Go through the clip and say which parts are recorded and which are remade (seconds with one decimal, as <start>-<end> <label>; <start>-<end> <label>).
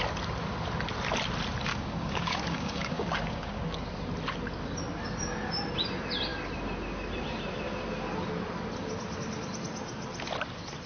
0.0-1.7 recorded; 1.7-3.6 remade; 3.6-10.9 recorded